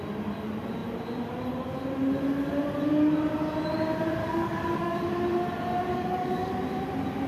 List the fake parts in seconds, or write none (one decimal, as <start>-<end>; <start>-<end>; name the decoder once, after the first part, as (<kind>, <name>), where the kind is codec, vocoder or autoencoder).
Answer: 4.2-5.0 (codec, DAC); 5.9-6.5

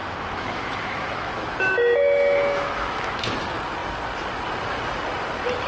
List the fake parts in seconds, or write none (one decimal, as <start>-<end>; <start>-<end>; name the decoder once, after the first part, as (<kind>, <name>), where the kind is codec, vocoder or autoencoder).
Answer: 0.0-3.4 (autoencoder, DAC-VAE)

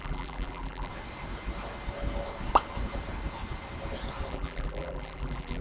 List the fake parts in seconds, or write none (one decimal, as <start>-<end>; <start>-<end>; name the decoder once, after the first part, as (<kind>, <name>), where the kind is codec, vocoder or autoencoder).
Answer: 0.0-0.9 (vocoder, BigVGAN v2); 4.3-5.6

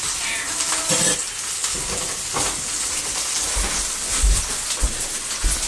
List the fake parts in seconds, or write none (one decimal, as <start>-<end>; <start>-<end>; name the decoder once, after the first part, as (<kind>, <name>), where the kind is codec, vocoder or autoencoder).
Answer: none

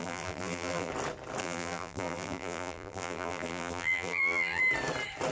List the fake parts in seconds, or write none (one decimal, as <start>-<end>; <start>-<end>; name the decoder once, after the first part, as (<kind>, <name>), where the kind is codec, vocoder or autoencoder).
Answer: 0.0-0.9 (vocoder, BigVGAN v2); 1.4-4.6